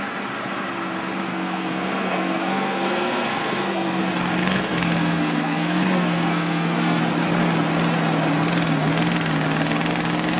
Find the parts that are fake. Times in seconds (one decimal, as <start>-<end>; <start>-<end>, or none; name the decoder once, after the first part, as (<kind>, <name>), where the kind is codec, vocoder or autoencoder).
1.3-4.0 (codec, SNAC); 4.4-7.0